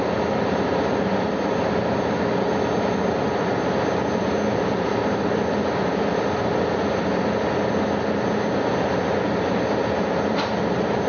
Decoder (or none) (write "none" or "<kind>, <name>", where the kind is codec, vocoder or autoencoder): none